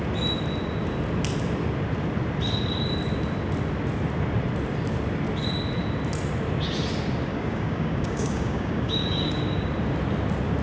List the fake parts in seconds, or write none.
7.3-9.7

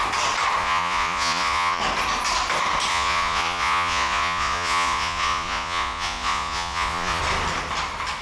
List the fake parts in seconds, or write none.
0.6-1.8; 2.9-7.2

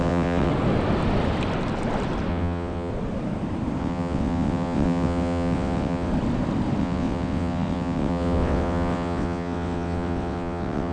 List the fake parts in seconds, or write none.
0.0-0.5; 2.3-2.9; 3.8-6.1; 6.8-10.9